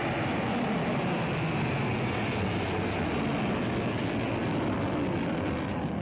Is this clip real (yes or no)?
yes